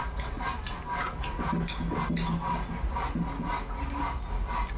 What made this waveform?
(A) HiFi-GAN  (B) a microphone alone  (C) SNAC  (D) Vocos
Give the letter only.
B